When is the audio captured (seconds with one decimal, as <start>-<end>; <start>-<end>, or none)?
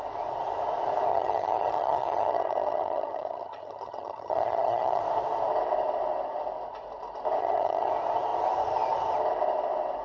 0.0-1.1; 5.0-7.4; 7.9-10.0